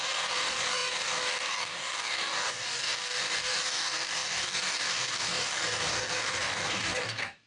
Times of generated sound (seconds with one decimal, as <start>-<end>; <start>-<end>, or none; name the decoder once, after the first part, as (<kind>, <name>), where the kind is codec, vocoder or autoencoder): 0.0-7.5 (codec, DAC)